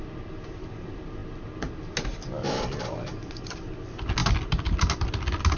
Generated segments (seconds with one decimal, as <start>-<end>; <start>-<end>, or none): 4.2-5.1